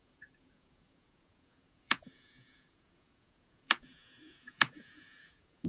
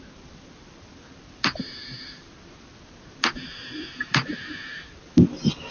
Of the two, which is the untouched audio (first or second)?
second